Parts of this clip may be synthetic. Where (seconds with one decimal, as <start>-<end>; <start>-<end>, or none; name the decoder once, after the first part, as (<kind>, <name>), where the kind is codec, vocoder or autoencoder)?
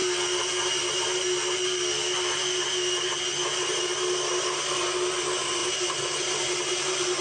none